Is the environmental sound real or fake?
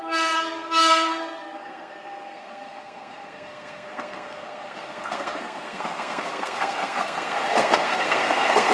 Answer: fake